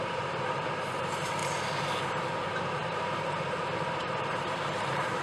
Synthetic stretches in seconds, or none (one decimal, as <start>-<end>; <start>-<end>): 0.0-1.4; 2.0-5.2